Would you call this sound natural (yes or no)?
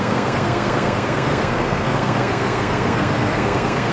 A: no